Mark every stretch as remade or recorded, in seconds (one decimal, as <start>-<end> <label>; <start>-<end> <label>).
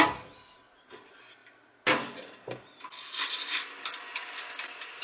0.0-5.0 recorded